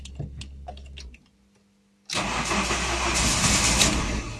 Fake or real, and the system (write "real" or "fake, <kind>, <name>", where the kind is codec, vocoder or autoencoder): real